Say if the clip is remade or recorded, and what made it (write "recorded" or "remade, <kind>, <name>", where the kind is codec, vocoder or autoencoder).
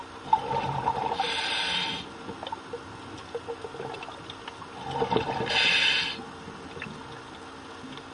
recorded